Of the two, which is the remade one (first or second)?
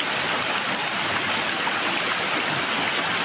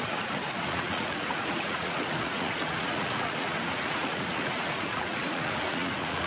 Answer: second